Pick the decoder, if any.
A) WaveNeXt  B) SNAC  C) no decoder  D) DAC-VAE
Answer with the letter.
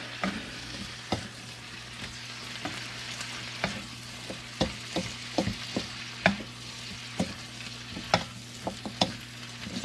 C